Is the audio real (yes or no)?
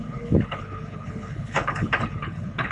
no